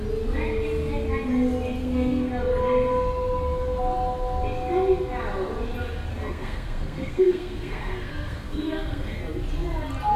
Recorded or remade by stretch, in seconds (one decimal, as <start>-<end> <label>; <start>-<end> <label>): 0.0-1.8 recorded; 1.8-2.3 remade; 2.3-6.1 recorded; 6.1-9.2 remade; 9.2-10.2 recorded